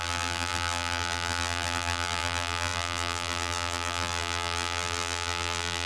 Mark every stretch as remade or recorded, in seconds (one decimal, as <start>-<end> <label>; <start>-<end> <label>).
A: 0.0-5.9 remade